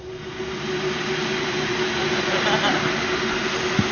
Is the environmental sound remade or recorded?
recorded